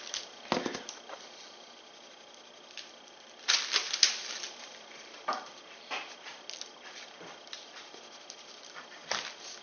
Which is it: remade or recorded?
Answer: recorded